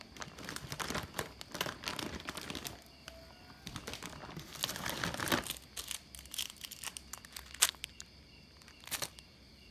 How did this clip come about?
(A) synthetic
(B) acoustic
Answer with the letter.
B